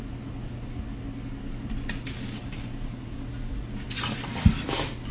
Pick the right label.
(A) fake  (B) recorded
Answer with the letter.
B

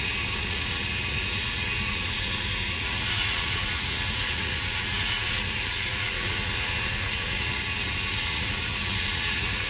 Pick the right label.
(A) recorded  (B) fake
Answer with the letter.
B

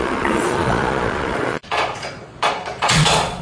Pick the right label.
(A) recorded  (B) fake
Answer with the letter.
B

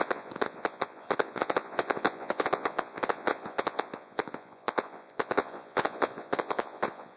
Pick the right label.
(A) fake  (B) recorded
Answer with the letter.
A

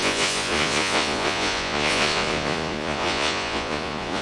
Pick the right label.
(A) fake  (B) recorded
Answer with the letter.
A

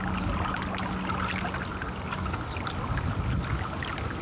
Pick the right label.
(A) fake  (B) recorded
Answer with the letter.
B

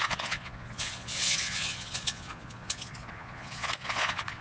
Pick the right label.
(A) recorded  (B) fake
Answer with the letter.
B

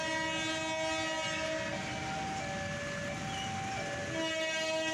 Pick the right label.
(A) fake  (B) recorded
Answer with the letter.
B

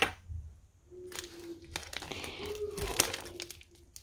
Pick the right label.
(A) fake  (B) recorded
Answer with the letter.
B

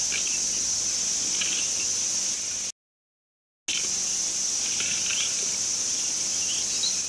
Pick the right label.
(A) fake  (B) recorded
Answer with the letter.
B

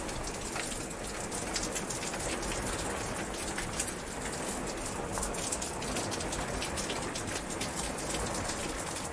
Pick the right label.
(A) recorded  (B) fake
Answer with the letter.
A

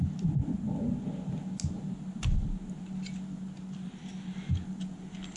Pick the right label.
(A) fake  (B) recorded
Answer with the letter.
B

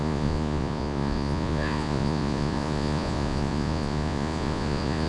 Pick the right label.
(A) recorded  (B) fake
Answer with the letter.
B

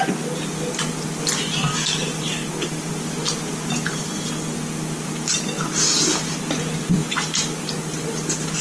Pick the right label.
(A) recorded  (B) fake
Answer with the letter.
A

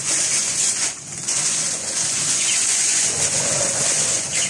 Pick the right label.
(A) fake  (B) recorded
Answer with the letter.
A